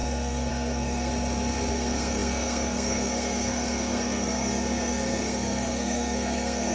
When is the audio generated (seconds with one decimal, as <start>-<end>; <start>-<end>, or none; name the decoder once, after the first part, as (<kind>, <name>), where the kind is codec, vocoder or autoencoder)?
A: 0.0-1.1 (codec, SNAC); 1.7-6.7